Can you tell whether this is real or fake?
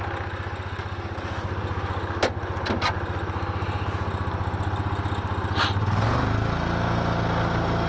real